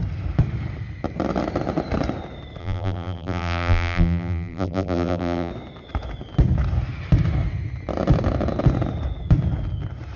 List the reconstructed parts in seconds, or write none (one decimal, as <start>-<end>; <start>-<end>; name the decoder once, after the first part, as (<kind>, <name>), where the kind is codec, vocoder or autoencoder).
2.6-5.5 (vocoder, BigVGAN v2)